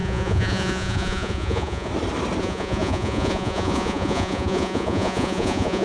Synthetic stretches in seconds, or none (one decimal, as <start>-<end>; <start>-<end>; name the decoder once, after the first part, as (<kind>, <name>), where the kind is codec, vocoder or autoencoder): 0.0-1.9 (vocoder, Vocos); 2.4-5.8